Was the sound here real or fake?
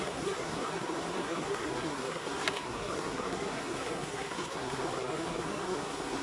fake